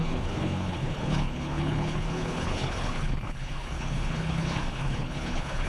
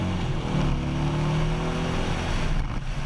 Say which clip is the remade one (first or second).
first